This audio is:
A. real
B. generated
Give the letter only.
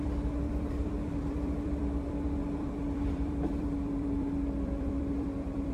B